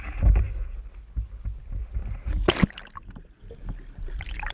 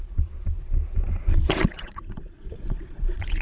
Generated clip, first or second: second